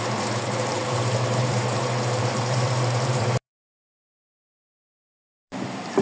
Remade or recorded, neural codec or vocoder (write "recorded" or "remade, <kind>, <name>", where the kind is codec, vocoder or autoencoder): remade, vocoder, BigVGAN v2